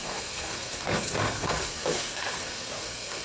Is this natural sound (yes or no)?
no